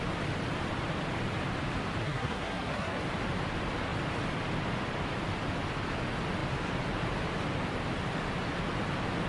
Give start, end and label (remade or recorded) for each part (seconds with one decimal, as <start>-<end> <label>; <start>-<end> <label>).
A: 0.0-2.0 recorded; 2.0-3.0 remade; 3.0-9.3 recorded